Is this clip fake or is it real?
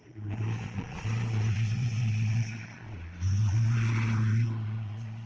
fake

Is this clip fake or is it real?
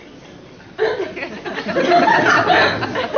real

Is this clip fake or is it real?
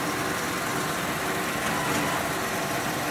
real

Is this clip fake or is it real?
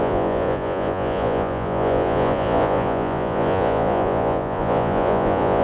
fake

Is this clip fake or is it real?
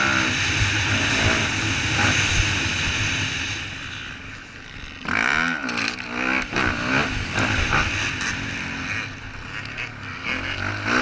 real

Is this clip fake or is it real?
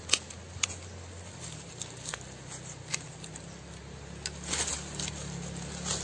real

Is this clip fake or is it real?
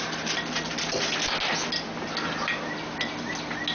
real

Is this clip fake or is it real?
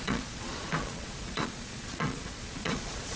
fake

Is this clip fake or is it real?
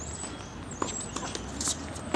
real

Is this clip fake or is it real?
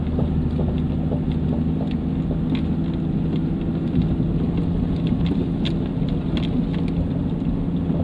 real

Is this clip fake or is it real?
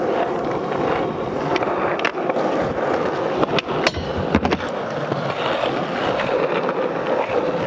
real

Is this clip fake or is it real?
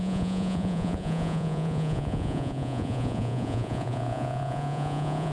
fake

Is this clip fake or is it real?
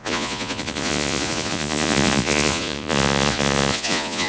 fake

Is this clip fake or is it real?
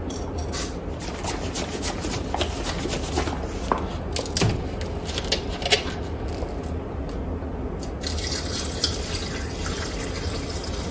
real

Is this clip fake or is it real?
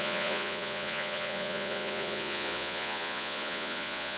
fake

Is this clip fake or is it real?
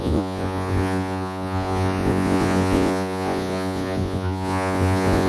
fake